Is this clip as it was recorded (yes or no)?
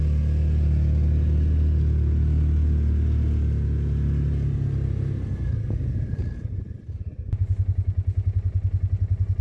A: yes